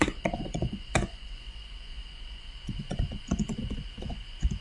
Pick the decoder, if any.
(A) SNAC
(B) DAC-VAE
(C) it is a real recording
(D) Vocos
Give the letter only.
D